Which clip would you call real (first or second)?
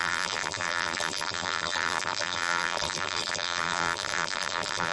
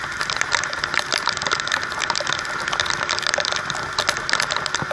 second